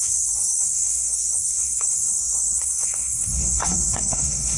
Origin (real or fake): fake